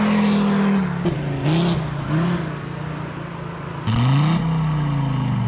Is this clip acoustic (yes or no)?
yes